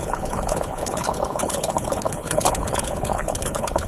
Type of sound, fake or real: fake